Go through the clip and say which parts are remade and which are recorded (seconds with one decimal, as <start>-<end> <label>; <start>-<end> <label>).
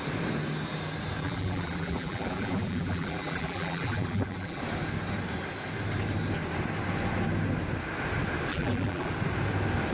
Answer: 0.0-1.2 recorded; 1.2-4.6 remade; 4.6-8.5 recorded; 8.5-9.1 remade; 9.1-9.9 recorded